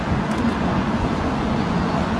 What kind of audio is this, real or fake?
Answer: fake